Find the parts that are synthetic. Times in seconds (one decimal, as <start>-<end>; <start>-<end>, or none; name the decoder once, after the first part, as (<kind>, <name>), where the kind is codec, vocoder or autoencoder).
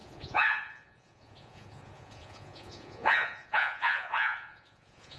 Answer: 0.0-5.2 (vocoder, Vocos)